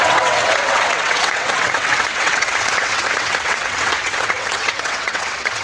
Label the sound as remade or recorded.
remade